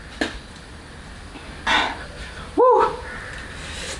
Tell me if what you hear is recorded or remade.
recorded